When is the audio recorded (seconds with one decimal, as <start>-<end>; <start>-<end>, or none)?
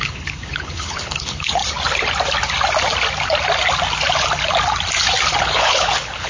1.6-5.4